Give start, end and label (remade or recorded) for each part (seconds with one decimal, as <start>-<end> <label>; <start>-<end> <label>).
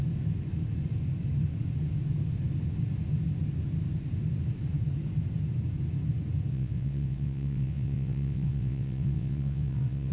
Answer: 0.0-6.5 recorded; 6.5-10.1 remade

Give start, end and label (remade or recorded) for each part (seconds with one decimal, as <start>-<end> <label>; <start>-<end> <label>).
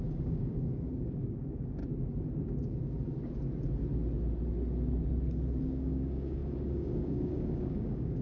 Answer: 0.0-1.8 remade; 1.8-5.6 recorded; 5.6-8.2 remade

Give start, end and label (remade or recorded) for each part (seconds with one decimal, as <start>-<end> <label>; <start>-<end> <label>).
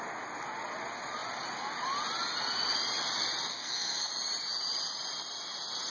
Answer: 0.0-3.5 recorded; 3.5-4.1 remade; 4.1-5.9 recorded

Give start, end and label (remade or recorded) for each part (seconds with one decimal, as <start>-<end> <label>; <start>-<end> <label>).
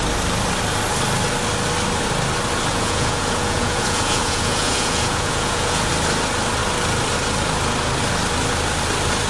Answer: 0.0-2.7 recorded; 2.7-5.9 remade; 5.9-9.3 recorded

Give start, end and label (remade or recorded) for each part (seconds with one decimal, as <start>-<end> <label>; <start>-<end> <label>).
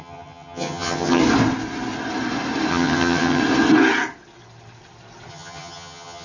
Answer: 0.0-1.2 remade; 1.2-2.7 recorded; 2.7-3.4 remade; 3.4-5.3 recorded; 5.3-6.2 remade